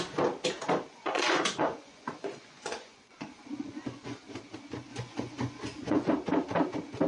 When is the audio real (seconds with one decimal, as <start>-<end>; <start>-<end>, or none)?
0.0-0.9; 4.2-4.9; 6.1-7.1